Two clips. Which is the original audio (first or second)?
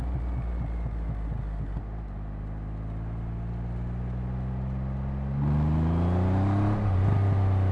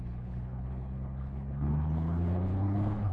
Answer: first